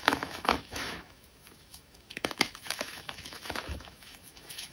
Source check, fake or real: fake